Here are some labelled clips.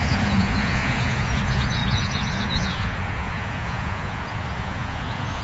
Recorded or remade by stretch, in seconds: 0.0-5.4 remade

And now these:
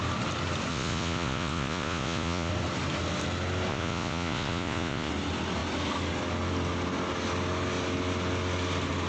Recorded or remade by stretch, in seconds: 0.0-0.7 recorded; 0.7-2.5 remade; 2.5-3.7 recorded; 3.7-5.1 remade; 5.1-9.1 recorded

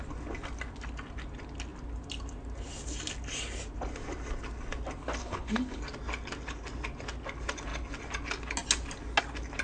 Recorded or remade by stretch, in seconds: 0.0-5.2 recorded; 5.2-5.8 remade; 5.8-9.6 recorded

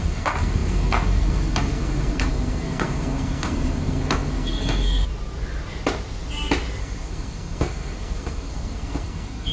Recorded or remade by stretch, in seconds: 0.0-5.1 remade; 5.1-6.8 recorded; 6.8-9.5 remade

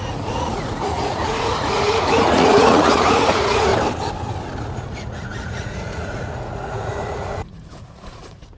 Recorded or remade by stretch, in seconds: 0.0-3.7 remade; 3.7-4.6 recorded; 4.6-8.6 remade

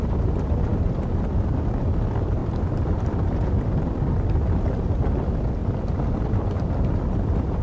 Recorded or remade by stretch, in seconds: 0.0-0.7 recorded; 0.7-1.4 remade; 1.4-2.4 recorded; 2.4-3.0 remade; 3.0-5.6 recorded; 5.6-7.0 remade; 7.0-7.6 recorded